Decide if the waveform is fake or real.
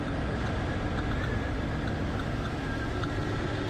real